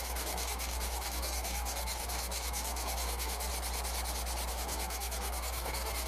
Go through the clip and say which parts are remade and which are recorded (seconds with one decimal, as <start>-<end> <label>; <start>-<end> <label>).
0.0-3.5 remade; 3.5-4.5 recorded; 4.5-6.1 remade